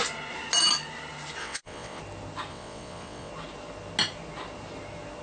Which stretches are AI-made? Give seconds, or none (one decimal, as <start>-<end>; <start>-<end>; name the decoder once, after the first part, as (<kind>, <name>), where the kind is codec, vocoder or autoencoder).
1.4-2.0 (vocoder, WaveNeXt); 2.5-3.3